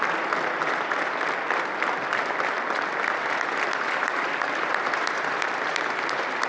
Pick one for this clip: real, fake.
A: real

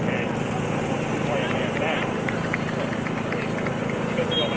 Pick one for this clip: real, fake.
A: real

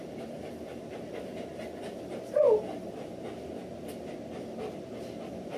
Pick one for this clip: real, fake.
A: real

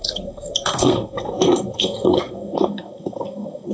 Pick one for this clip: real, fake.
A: fake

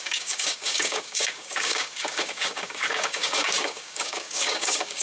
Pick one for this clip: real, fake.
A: fake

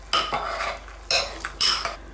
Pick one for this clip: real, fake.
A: real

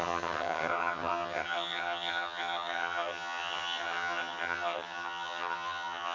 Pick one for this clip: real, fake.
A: fake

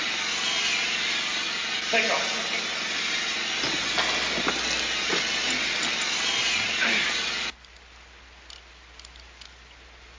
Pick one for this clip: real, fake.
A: real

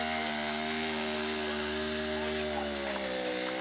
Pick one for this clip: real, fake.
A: real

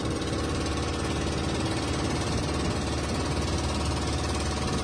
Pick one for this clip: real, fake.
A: real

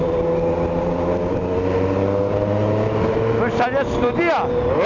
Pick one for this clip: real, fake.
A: real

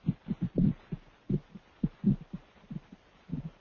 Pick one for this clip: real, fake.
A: real